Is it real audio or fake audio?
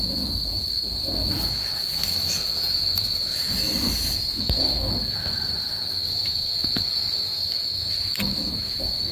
fake